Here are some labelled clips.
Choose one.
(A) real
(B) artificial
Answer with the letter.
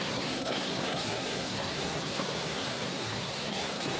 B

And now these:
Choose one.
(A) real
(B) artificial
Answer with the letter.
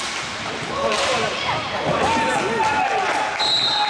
A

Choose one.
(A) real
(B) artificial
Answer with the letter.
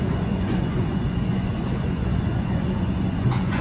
B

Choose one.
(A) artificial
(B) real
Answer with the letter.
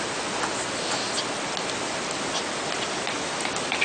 B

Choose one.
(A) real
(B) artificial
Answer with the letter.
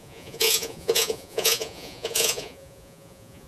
B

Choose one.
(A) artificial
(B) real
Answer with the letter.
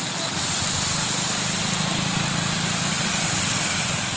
B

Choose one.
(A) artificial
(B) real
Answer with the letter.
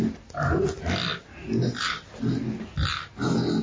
B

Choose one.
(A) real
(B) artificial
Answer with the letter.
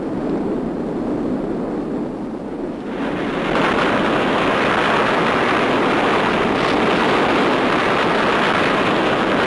A